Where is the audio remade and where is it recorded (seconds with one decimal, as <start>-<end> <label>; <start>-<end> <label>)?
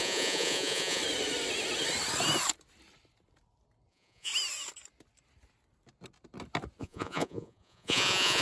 0.0-1.0 remade; 1.0-3.9 recorded; 3.9-4.3 remade; 4.3-6.8 recorded; 6.8-8.4 remade